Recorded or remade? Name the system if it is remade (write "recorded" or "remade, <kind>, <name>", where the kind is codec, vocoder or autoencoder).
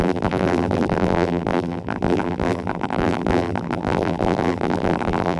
remade, vocoder, BigVGAN v2